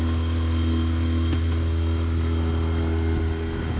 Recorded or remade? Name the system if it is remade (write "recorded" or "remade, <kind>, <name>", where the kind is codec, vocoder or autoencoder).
recorded